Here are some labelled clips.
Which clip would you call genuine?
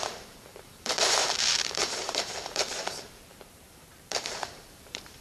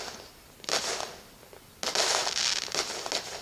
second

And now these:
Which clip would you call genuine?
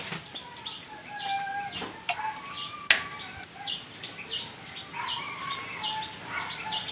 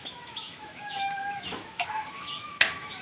first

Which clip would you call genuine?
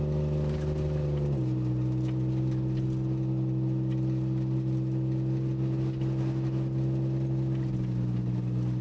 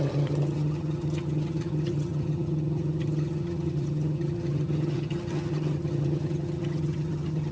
first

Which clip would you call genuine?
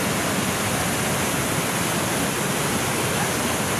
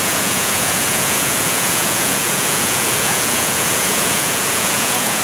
first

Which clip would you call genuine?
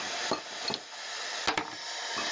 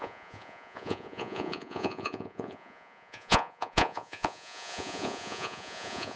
first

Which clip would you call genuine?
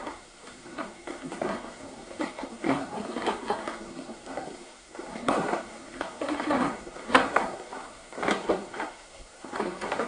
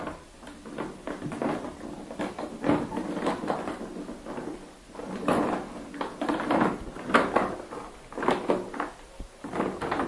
second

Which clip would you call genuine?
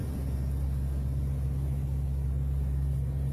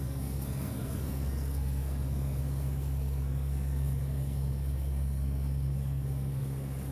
first